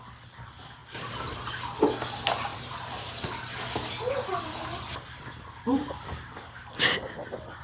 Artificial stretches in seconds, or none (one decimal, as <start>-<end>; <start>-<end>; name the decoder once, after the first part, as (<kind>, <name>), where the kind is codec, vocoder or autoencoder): 0.8-1.8 (vocoder, BigVGAN v2); 2.5-3.0; 4.0-6.0